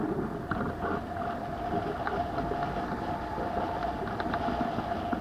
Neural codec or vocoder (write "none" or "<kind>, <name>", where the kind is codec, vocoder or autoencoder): none